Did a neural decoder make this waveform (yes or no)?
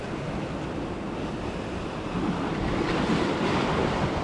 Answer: no